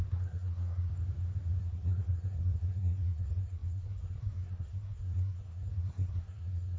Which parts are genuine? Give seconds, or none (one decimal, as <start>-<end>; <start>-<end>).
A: 0.9-1.6